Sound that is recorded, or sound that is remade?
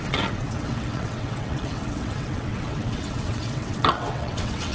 remade